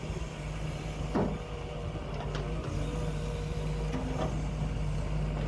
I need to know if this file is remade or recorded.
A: recorded